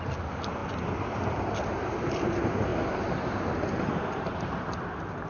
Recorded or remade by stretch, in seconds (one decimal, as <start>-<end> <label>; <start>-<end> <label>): 0.0-2.7 remade; 2.7-3.3 recorded; 3.3-5.3 remade